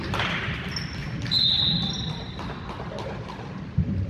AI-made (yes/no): no